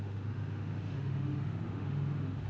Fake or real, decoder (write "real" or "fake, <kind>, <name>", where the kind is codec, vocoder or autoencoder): fake, autoencoder, DAC-VAE